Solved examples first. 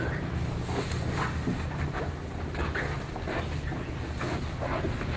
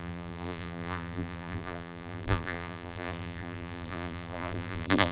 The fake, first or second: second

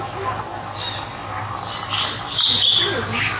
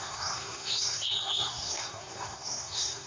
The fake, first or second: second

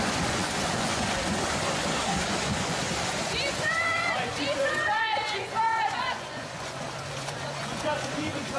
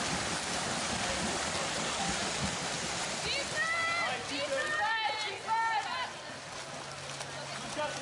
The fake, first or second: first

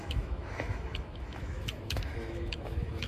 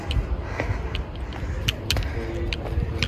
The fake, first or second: first